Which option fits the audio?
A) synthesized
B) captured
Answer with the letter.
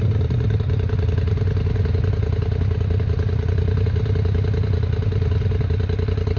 B